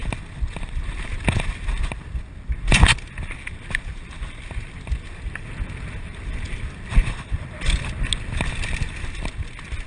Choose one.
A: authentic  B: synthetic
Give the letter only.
A